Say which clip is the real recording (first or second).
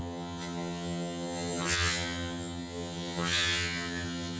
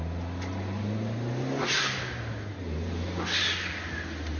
second